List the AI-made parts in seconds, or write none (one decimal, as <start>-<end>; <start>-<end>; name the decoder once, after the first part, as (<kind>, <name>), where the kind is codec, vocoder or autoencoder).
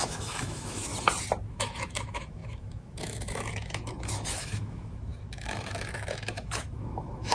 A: 0.0-0.9 (autoencoder, DAC-VAE); 1.5-7.3